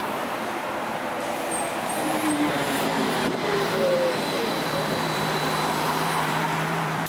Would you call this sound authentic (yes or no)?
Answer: no